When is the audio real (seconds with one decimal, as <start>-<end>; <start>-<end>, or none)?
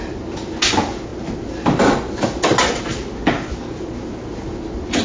0.0-5.0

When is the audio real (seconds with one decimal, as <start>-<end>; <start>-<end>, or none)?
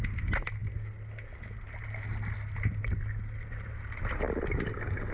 0.0-5.1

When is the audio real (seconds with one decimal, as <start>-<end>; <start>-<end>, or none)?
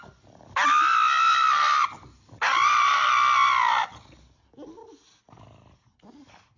0.0-6.6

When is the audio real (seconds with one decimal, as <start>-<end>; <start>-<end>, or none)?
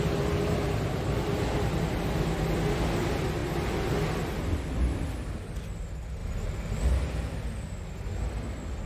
0.0-6.2; 6.9-8.9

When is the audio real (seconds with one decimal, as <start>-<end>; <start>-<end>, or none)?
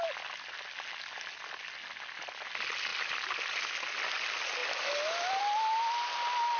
0.0-2.9; 3.5-4.6; 5.4-6.6